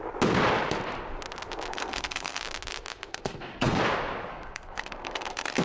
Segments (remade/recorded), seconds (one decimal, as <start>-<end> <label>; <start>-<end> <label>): 0.0-1.7 recorded; 1.7-2.4 remade; 2.4-3.1 recorded; 3.1-3.8 remade; 3.8-4.3 recorded; 4.3-5.6 remade